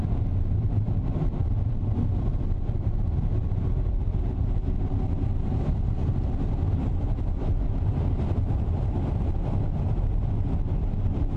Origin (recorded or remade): remade